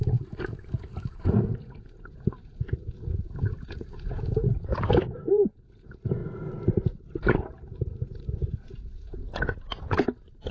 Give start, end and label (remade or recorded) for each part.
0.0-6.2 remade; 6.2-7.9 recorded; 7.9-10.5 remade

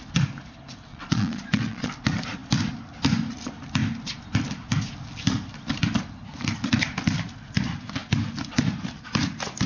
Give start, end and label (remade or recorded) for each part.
0.0-0.9 recorded; 0.9-1.9 remade; 1.9-9.7 recorded

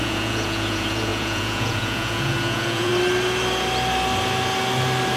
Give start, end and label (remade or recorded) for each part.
0.0-2.9 remade; 2.9-5.2 recorded

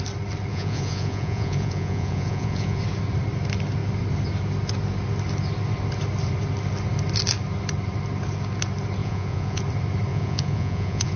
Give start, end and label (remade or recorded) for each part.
0.0-0.5 recorded; 0.5-2.8 remade; 2.8-9.0 recorded; 9.0-9.6 remade; 9.6-10.1 recorded; 10.1-11.2 remade

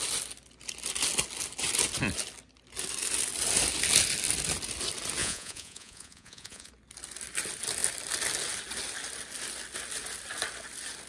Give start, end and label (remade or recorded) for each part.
0.0-5.2 recorded; 5.2-6.7 remade; 6.7-11.1 recorded

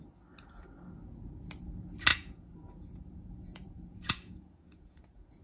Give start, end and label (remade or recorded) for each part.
0.0-2.1 recorded; 2.1-5.4 remade

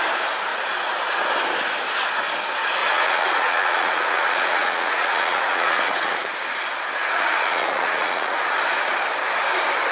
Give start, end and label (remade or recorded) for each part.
0.0-2.8 recorded; 2.8-6.3 remade; 6.3-7.0 recorded; 7.0-8.4 remade; 8.4-9.9 recorded